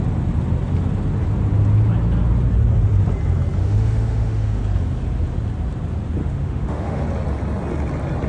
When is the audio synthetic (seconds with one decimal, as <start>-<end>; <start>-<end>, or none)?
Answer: 3.6-4.6; 6.2-7.0